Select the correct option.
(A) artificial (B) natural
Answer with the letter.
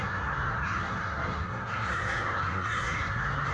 A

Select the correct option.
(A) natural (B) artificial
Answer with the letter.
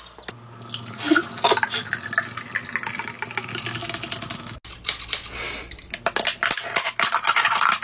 A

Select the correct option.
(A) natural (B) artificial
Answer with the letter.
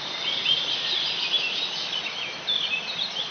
A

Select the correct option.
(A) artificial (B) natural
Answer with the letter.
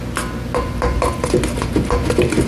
B